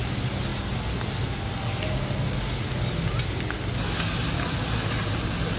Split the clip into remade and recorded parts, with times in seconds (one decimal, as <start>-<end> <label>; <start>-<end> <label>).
0.0-5.6 recorded